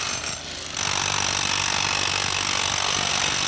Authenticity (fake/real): real